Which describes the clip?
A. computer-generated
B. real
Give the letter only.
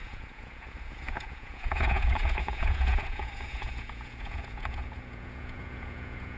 A